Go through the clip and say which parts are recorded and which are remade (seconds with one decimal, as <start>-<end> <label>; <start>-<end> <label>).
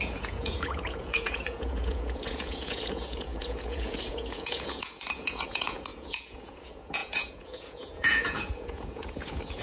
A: 0.0-9.6 remade